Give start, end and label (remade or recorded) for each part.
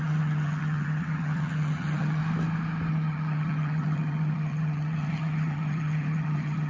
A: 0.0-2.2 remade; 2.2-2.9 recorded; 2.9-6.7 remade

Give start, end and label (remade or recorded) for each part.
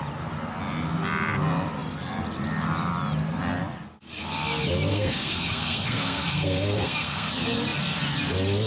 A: 0.0-4.9 recorded; 4.9-7.3 remade; 7.3-8.7 recorded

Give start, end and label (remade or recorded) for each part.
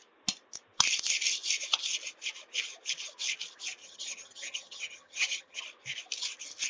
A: 0.0-3.8 recorded; 3.8-5.6 remade; 5.6-6.7 recorded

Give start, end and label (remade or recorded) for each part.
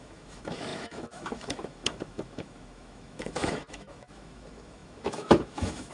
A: 0.0-5.9 remade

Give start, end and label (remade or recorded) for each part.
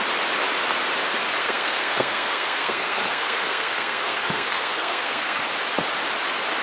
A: 0.0-1.4 recorded; 1.4-5.4 remade; 5.4-6.6 recorded